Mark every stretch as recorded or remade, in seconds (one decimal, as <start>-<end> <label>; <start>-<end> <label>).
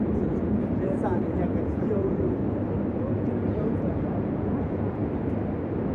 0.0-2.4 remade; 2.4-3.0 recorded; 3.0-5.0 remade; 5.0-5.9 recorded